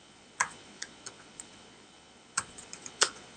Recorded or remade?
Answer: remade